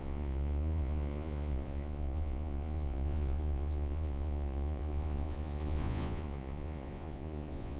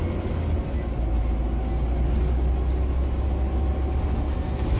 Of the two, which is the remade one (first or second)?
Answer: first